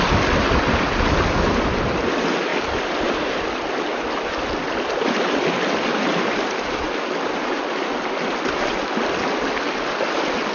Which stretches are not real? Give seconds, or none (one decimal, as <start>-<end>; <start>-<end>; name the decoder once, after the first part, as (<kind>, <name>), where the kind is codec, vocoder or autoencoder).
2.5-3.7 (vocoder, BigVGAN v2)